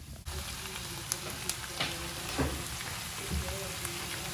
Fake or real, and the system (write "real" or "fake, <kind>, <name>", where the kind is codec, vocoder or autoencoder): real